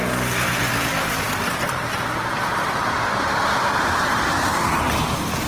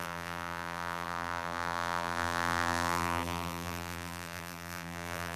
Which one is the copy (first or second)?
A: second